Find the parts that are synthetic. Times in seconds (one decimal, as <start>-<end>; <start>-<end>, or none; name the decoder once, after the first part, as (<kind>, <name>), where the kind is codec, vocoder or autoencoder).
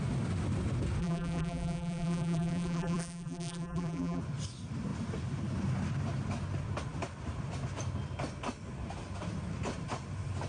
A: 1.0-4.2 (vocoder, BigVGAN v2)